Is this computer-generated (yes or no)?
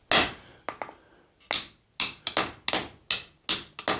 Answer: no